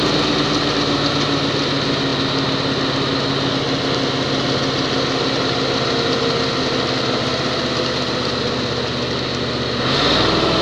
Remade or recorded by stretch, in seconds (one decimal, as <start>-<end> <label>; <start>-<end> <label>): 0.0-10.6 recorded